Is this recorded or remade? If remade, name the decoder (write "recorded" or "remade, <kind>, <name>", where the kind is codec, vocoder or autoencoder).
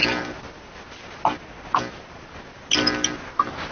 recorded